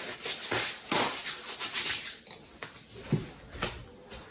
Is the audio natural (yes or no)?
yes